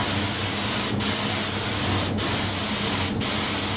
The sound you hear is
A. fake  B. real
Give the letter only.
B